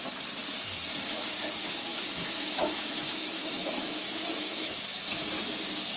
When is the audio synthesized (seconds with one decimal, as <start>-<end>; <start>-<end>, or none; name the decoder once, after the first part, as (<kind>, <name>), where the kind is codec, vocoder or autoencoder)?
1.9-4.8 (autoencoder, DAC-VAE)